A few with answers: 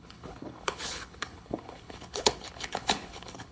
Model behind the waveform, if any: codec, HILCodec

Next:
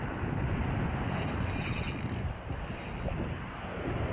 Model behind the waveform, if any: none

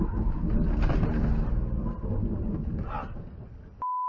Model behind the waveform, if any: none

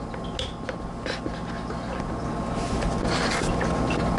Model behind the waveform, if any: none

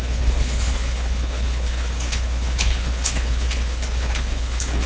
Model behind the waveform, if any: codec, HILCodec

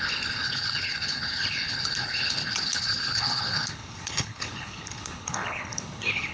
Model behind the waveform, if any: codec, HILCodec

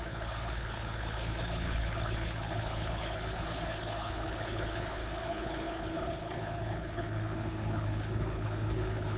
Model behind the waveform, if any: codec, HILCodec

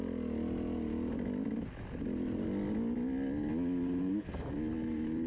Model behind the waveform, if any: none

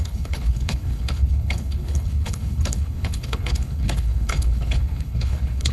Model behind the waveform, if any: codec, HILCodec